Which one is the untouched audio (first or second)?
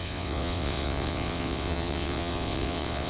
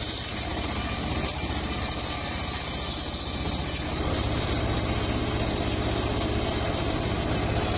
second